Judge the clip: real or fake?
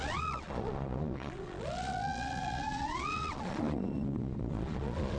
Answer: fake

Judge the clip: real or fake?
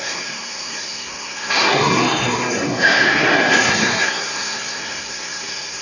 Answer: fake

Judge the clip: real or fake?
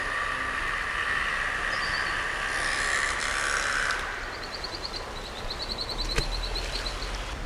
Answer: real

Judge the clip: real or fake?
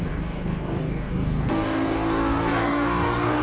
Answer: fake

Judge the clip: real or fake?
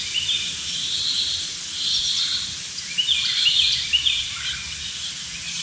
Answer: real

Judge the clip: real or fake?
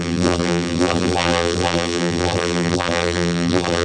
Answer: fake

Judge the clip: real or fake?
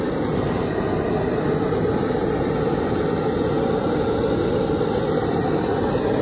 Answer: real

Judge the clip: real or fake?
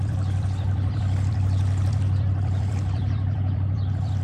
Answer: fake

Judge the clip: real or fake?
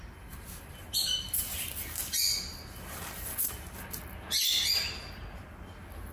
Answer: real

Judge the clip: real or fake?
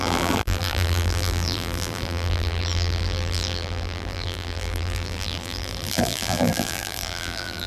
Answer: fake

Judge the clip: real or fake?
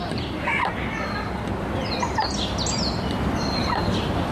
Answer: real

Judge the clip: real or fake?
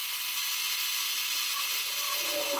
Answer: real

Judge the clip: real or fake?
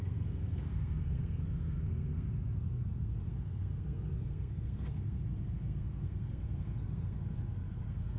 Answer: fake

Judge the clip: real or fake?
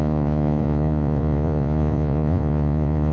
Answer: fake